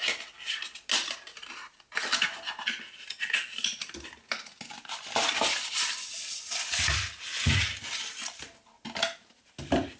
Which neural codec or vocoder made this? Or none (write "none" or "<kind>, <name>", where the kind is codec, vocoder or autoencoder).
none